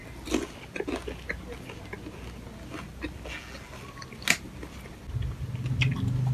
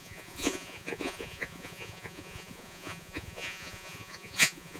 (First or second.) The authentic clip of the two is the first